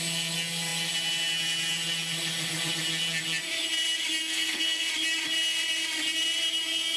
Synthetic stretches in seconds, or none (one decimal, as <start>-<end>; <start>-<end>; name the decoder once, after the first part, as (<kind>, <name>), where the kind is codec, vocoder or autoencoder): 4.2-4.9 (codec, SNAC)